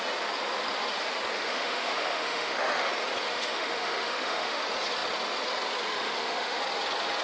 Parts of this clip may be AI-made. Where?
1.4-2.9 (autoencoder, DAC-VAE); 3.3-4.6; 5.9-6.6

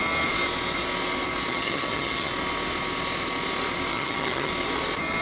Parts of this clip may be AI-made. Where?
1.5-2.3 (vocoder, HiFi-GAN); 3.9-4.5

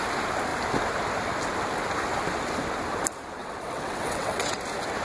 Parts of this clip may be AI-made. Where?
3.4-4.6 (vocoder, WaveNeXt)